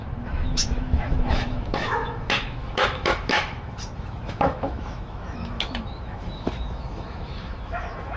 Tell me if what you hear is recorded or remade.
remade